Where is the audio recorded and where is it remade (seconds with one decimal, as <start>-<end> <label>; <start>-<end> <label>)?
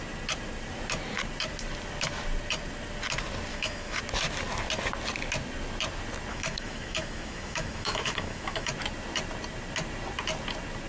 0.0-3.5 recorded; 3.5-4.0 remade; 4.0-6.3 recorded; 6.3-8.7 remade; 8.7-10.9 recorded